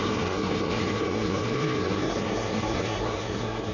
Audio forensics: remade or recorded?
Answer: remade